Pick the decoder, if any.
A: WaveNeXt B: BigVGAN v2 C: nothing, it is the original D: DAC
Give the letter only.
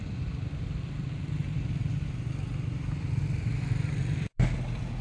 B